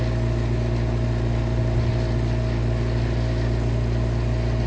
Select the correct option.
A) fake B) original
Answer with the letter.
B